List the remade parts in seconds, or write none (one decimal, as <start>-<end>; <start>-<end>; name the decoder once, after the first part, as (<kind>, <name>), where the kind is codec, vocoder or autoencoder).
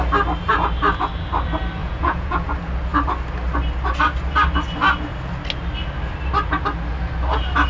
1.8-2.5 (vocoder, Vocos)